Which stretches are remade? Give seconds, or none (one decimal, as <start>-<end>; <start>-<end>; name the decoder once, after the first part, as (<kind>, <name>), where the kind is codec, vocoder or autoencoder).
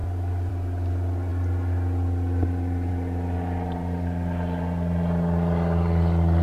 none